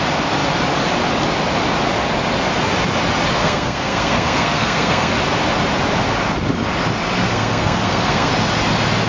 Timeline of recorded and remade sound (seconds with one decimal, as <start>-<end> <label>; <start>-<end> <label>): 0.0-3.4 recorded; 3.4-5.1 remade; 5.1-7.3 recorded; 7.3-8.3 remade; 8.3-9.1 recorded